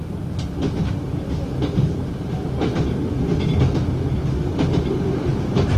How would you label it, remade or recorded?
recorded